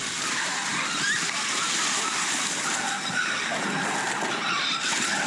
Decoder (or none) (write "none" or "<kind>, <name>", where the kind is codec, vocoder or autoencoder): none